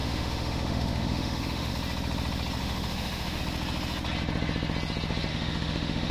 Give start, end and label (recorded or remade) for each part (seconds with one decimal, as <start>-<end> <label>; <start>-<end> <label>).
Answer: 0.0-1.7 remade; 1.7-2.6 recorded; 2.6-3.4 remade; 3.4-5.3 recorded; 5.3-6.1 remade